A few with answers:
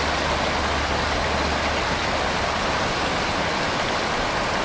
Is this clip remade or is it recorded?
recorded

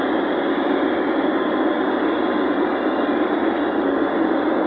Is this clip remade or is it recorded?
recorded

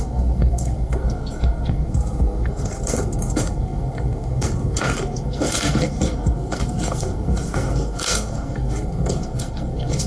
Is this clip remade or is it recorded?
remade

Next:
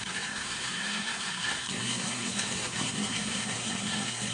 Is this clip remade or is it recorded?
remade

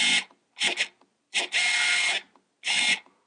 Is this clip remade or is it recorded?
recorded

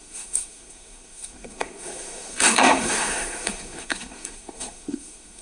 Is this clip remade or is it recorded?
remade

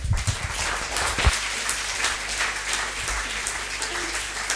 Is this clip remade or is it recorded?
recorded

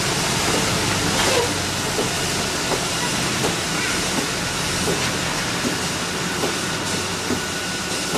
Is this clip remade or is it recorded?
recorded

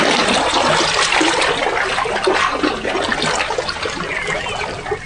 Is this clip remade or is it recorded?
recorded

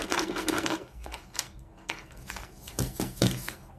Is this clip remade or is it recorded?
remade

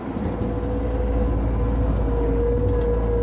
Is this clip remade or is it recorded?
recorded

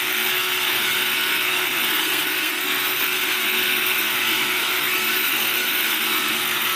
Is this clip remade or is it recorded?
remade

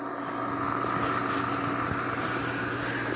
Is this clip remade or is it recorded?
recorded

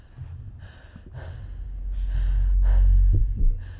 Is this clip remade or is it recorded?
recorded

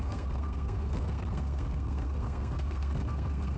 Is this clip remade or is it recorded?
remade